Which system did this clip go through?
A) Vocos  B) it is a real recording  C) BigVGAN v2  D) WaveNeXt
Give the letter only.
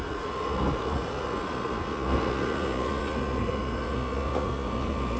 A